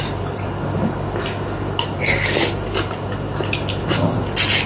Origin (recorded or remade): recorded